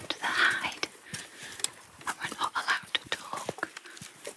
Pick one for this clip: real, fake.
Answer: real